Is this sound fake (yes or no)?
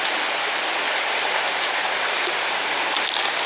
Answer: no